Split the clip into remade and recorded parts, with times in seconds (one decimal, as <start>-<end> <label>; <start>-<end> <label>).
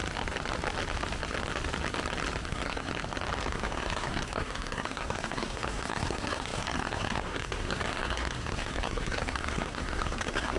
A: 0.0-2.5 recorded; 2.5-2.9 remade; 2.9-3.5 recorded; 3.5-10.6 remade